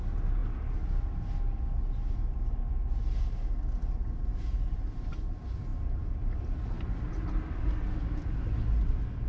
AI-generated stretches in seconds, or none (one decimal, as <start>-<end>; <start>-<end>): 4.3-5.1